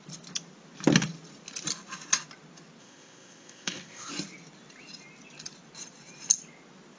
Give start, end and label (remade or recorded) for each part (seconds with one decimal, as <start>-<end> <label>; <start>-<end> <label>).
0.0-2.8 recorded; 2.8-4.1 remade; 4.1-7.0 recorded